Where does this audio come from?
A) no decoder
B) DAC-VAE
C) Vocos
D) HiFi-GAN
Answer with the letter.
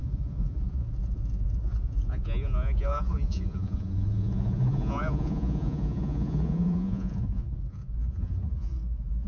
C